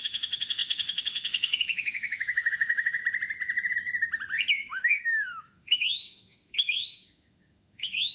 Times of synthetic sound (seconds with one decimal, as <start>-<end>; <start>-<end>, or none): 0.0-3.0; 4.5-8.1